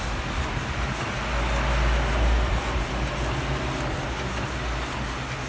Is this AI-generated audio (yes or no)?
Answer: no